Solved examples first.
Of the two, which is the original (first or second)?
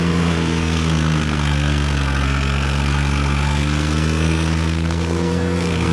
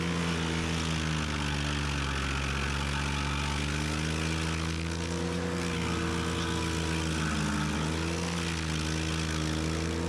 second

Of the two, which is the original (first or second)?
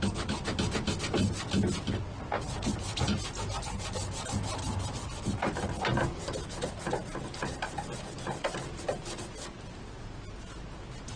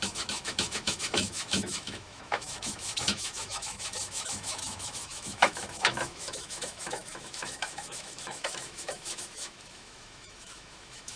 first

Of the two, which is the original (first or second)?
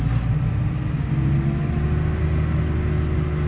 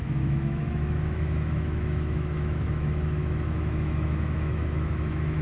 first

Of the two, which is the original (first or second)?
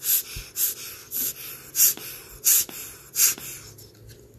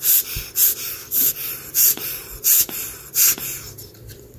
first